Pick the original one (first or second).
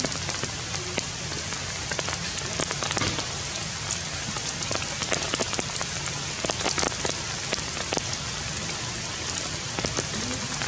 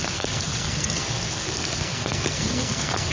first